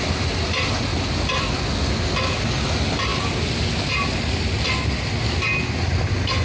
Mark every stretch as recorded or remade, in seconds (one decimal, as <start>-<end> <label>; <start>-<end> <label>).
0.0-6.4 recorded